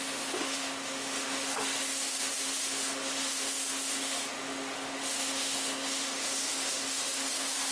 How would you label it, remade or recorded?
remade